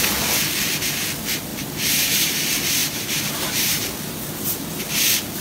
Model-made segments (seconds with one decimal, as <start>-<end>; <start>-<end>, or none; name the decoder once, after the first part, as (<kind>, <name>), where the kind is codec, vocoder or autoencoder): 1.5-2.4 (vocoder, BigVGAN v2); 2.8-3.8